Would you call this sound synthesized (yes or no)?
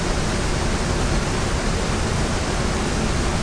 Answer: no